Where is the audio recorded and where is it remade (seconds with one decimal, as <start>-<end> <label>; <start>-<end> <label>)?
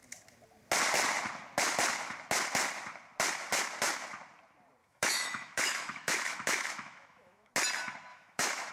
0.0-4.8 recorded; 4.8-7.5 remade; 7.5-8.1 recorded; 8.1-8.7 remade